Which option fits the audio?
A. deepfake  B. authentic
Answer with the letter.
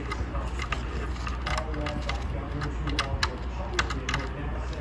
B